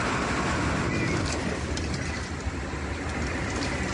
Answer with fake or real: real